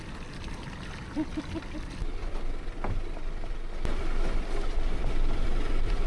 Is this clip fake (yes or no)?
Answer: no